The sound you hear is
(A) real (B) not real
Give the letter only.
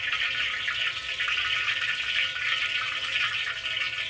A